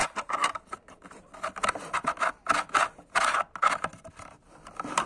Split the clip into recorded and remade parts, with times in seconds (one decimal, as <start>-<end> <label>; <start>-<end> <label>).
0.0-5.1 recorded

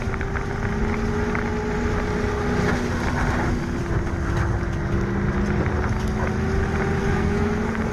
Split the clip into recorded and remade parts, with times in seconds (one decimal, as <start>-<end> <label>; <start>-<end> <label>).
0.0-7.0 recorded; 7.0-7.9 remade

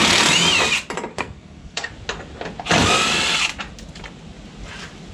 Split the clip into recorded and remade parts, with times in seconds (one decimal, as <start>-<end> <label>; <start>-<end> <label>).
0.0-1.1 recorded; 1.1-1.9 remade; 1.9-5.1 recorded

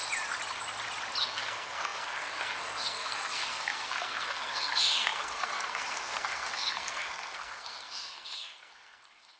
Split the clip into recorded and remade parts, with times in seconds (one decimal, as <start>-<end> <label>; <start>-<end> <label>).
0.0-1.2 recorded; 1.2-9.4 remade

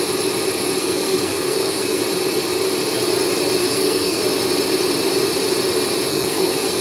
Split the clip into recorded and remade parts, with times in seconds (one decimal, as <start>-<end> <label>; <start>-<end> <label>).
0.0-0.8 recorded; 0.8-2.0 remade; 2.0-3.6 recorded; 3.6-4.2 remade; 4.2-6.1 recorded; 6.1-6.8 remade

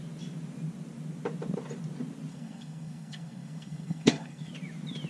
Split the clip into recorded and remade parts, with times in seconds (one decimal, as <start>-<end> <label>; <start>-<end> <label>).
0.0-2.3 recorded; 2.3-4.5 remade; 4.5-5.1 recorded